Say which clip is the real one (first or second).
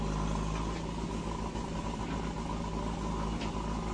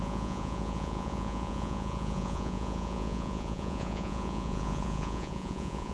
first